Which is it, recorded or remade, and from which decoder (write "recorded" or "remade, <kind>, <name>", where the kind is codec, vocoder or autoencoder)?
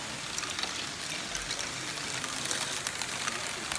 recorded